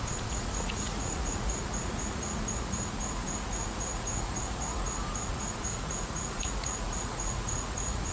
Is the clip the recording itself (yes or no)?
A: no